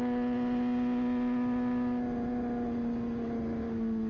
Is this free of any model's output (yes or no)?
yes